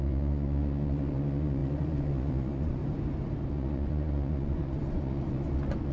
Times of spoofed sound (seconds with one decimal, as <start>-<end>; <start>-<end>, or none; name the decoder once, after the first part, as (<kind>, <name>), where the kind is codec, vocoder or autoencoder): 0.0-2.8 (vocoder, Vocos); 3.5-5.9